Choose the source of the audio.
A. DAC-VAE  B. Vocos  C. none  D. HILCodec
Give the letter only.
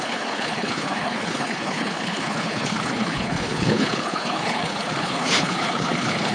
D